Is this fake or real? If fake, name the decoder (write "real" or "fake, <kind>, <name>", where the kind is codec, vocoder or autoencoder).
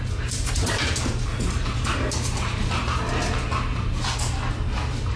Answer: real